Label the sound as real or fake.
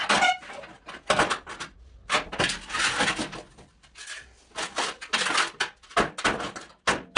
real